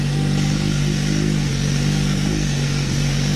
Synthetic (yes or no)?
yes